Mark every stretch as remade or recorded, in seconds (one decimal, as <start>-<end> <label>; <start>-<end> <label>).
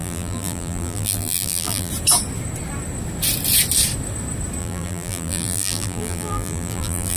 0.0-1.9 remade; 1.9-4.6 recorded; 4.6-7.2 remade